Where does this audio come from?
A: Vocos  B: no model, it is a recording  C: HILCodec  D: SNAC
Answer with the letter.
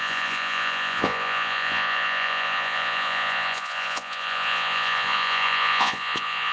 A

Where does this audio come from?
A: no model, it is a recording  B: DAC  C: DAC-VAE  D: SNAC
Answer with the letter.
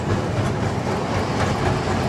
A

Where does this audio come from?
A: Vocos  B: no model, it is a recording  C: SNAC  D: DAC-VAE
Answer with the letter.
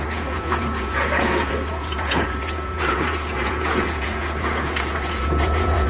A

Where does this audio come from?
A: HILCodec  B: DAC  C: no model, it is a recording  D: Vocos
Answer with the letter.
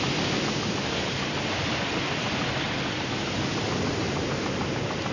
C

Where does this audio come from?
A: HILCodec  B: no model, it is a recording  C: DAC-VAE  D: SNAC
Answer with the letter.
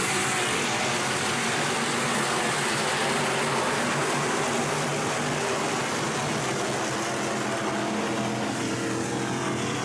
B